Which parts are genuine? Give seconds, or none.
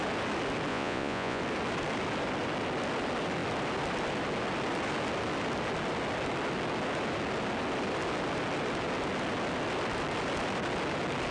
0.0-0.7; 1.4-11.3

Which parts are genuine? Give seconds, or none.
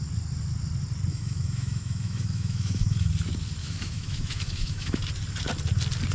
0.0-1.1; 3.1-3.6; 5.0-6.1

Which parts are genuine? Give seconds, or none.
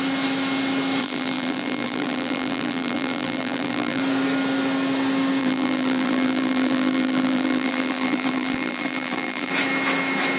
0.0-1.0; 4.0-5.4; 9.5-10.4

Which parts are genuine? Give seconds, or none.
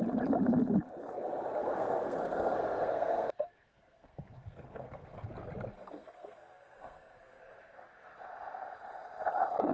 0.0-1.6; 5.3-5.7; 7.4-9.7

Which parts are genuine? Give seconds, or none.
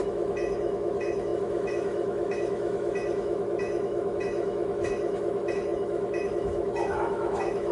none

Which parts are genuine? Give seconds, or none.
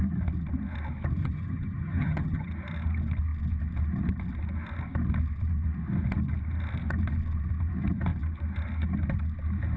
0.0-1.2; 2.5-9.8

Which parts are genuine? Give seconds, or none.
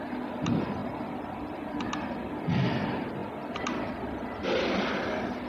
0.0-5.5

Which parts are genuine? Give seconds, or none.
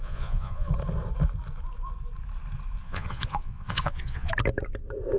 0.7-2.8; 4.3-5.2